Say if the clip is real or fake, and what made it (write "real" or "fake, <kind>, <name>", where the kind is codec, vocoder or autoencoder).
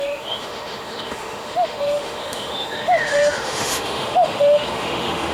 fake, autoencoder, DAC-VAE